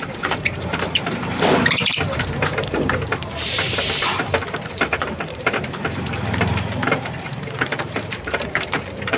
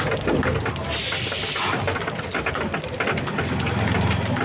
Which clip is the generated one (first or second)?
first